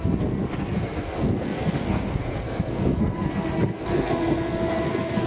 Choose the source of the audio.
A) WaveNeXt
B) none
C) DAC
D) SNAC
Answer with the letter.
D